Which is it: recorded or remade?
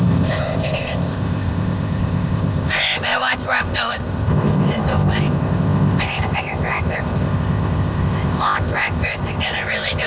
remade